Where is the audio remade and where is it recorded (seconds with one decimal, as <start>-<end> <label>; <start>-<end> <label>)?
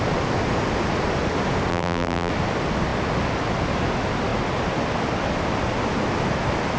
0.0-1.7 recorded; 1.7-2.3 remade; 2.3-6.8 recorded